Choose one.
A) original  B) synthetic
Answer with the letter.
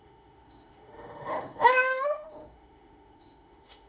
B